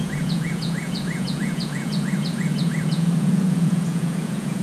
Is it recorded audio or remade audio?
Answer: remade